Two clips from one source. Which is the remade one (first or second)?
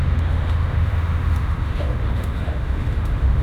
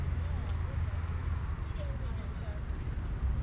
first